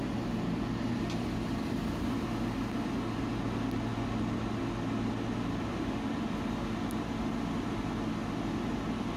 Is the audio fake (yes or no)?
no